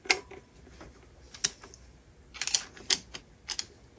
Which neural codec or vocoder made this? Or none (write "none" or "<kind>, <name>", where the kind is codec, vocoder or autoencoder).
none